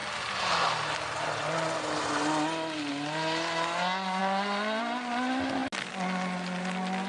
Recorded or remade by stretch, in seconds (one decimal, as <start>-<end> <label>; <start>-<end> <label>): 0.0-7.1 recorded